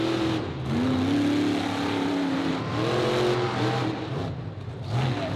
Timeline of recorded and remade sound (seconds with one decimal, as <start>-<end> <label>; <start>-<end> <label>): 0.0-5.4 recorded